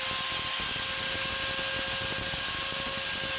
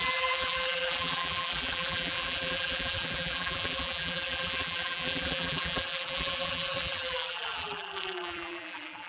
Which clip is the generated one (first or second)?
second